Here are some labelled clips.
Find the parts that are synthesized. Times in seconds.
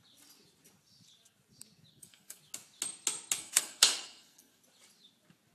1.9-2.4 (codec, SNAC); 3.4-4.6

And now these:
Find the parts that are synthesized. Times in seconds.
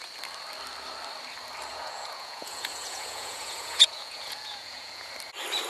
1.7-5.1 (vocoder, Vocos)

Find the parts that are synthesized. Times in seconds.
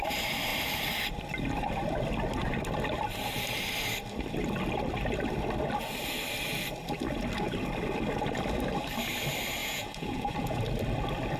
9.6-10.6 (vocoder, Vocos)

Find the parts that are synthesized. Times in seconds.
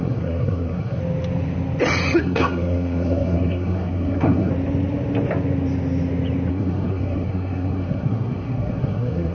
0.0-1.0 (codec, SNAC); 2.2-4.5; 6.5-9.3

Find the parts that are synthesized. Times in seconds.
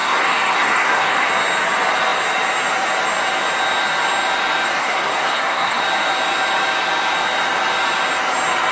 0.0-1.3 (codec, SNAC); 4.8-5.8